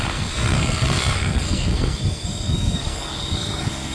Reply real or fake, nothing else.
fake